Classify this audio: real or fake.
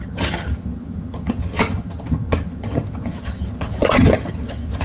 fake